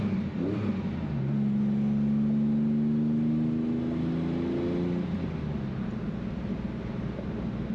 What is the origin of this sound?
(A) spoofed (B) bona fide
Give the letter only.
B